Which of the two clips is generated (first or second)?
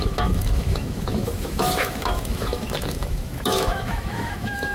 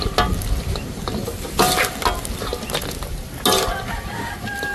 first